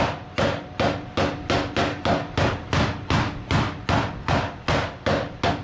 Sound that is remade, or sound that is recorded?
recorded